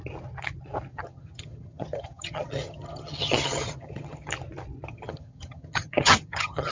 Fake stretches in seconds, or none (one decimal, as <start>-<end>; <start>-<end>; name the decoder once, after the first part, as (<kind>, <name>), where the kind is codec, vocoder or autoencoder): 0.9-4.3 (vocoder, HiFi-GAN); 4.9-6.7

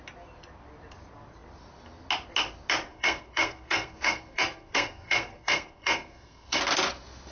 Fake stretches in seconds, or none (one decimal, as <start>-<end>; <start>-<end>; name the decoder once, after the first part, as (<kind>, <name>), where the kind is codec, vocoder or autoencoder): 2.9-6.6 (codec, SNAC)

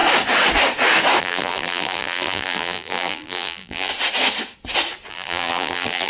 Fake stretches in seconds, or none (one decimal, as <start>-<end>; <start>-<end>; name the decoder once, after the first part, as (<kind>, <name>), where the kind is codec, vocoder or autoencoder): 1.2-3.9 (vocoder, BigVGAN v2); 5.1-6.1